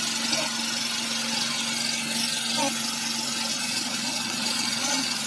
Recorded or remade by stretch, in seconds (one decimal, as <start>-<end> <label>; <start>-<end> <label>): 0.0-3.5 recorded; 3.5-5.3 remade